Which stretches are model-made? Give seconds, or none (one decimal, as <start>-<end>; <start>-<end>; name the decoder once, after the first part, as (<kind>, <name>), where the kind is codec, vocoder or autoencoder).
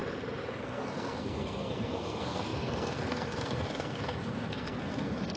0.6-5.4 (codec, SNAC)